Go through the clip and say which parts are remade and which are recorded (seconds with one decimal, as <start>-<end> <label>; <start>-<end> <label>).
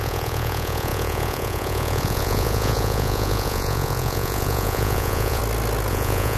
0.0-5.4 remade; 5.4-5.9 recorded; 5.9-6.4 remade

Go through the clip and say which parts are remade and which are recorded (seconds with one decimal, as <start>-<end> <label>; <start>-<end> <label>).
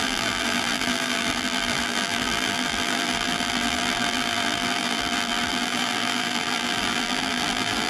0.0-7.9 remade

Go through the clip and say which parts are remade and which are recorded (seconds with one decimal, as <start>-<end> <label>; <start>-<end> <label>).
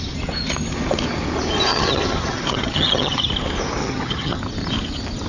0.0-1.7 recorded; 1.7-3.3 remade; 3.3-3.8 recorded; 3.8-4.4 remade; 4.4-5.3 recorded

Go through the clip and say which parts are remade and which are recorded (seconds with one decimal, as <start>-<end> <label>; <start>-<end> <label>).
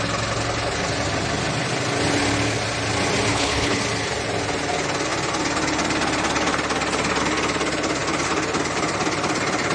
0.0-3.3 recorded; 3.3-3.8 remade; 3.8-9.7 recorded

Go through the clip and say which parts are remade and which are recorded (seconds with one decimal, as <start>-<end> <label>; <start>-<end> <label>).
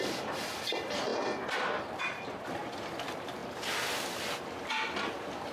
0.0-3.4 remade; 3.4-5.1 recorded; 5.1-5.5 remade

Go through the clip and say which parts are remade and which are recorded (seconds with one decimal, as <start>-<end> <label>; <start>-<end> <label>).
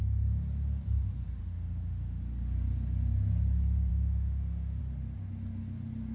0.0-1.4 recorded; 1.4-2.2 remade; 2.2-3.9 recorded; 3.9-4.8 remade; 4.8-6.1 recorded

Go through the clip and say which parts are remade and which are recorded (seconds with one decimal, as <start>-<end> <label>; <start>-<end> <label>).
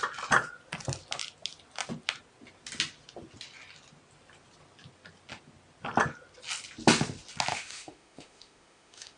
0.0-7.5 recorded; 7.5-9.2 remade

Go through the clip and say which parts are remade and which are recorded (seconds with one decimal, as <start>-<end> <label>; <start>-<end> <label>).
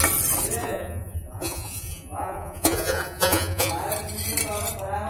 0.0-0.6 recorded; 0.6-3.7 remade; 3.7-5.1 recorded